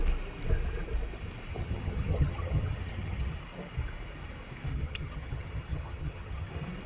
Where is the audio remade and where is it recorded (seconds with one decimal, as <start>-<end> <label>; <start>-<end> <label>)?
0.0-1.5 recorded; 1.5-3.3 remade; 3.3-4.7 recorded; 4.7-6.5 remade; 6.5-6.9 recorded